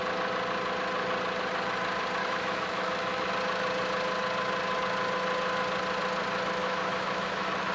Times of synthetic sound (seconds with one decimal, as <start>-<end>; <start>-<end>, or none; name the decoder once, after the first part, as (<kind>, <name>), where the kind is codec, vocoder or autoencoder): 2.2-3.3 (autoencoder, DAC-VAE); 6.6-7.7